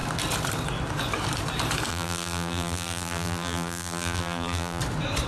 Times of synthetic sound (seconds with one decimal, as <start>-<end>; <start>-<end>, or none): 1.9-4.8